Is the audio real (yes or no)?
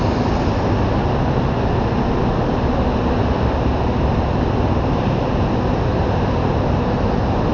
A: yes